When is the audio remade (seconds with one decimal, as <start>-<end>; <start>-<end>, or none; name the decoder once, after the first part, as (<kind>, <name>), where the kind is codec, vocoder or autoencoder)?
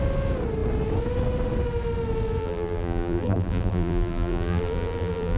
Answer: 2.4-5.4 (vocoder, BigVGAN v2)